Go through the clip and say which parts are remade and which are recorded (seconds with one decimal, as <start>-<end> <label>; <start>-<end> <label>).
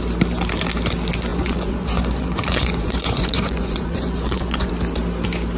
0.0-1.3 recorded; 1.3-4.7 remade; 4.7-5.6 recorded